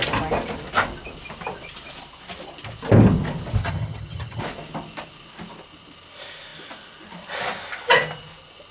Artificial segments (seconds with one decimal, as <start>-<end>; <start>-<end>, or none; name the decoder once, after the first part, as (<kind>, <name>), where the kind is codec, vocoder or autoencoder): 3.6-4.4 (vocoder, HiFi-GAN)